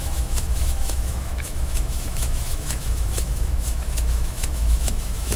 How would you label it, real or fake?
fake